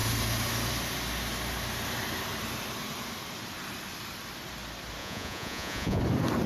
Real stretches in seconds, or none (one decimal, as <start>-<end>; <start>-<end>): 0.0-5.0; 6.0-6.5